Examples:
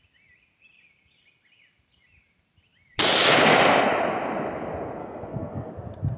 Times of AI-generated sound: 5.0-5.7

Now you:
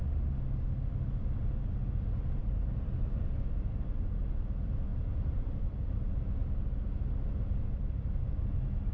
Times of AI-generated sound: 2.4-3.1

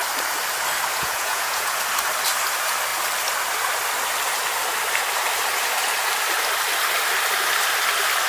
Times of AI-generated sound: 0.9-1.8

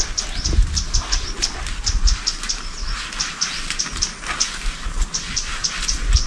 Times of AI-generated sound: none

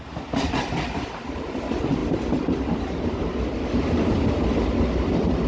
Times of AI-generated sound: 2.0-4.3

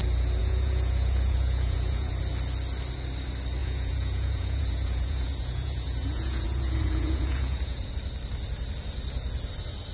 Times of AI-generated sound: 0.4-2.2; 3.6-7.9

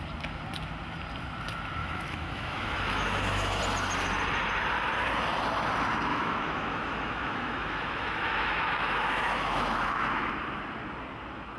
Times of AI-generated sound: 1.8-3.6; 6.1-10.3